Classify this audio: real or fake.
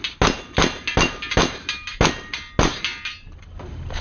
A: real